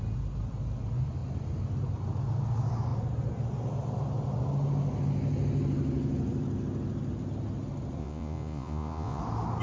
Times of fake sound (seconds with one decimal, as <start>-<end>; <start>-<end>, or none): 8.0-9.2